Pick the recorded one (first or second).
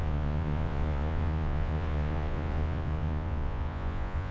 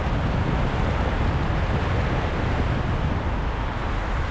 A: second